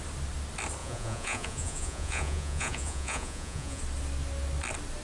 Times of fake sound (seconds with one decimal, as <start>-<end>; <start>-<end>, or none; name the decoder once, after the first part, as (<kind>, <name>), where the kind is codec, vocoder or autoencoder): 0.8-3.8 (vocoder, Vocos)

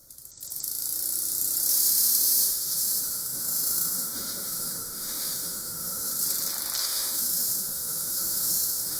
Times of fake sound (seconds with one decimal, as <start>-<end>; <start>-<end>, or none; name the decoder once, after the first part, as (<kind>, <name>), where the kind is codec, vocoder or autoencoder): 1.7-6.1 (autoencoder, DAC-VAE); 6.8-9.0

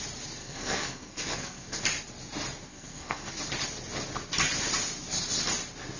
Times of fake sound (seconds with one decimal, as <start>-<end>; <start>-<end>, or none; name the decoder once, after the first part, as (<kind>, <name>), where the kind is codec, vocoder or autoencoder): 0.4-1.8 (codec, SNAC); 2.7-3.3

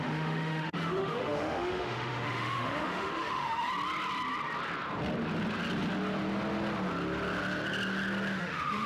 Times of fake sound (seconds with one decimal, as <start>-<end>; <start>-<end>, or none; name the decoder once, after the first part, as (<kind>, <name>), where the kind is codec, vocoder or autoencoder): 0.0-3.7 (autoencoder, DAC-VAE); 8.4-8.9